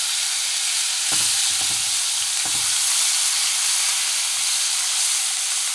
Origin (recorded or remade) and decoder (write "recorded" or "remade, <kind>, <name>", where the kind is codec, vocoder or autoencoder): recorded